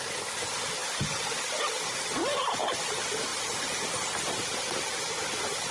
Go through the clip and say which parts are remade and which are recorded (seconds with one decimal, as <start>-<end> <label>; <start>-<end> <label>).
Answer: 0.0-5.7 recorded